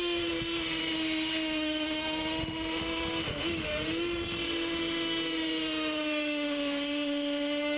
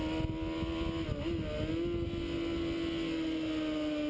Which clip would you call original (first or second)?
second